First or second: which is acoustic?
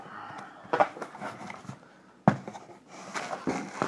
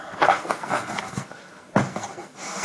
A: first